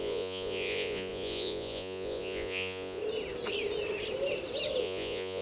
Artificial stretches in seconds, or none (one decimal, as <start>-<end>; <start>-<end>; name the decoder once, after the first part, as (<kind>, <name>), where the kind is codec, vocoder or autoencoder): 0.0-3.0 (vocoder, Vocos); 4.8-5.4